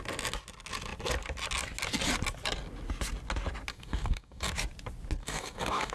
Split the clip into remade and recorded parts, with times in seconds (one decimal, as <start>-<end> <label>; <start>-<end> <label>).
0.0-3.7 recorded; 3.7-4.5 remade; 4.5-5.2 recorded; 5.2-5.9 remade